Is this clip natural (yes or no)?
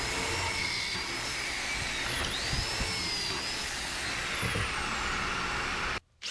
yes